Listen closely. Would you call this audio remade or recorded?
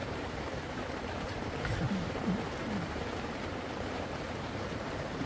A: remade